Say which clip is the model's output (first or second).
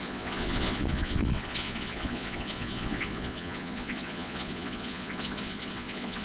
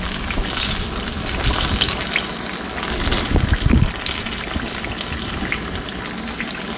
first